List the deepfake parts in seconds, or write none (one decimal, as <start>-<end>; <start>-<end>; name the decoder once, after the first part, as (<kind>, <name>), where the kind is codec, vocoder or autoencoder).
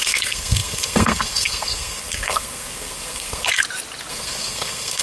0.0-3.6 (codec, SNAC); 4.1-5.0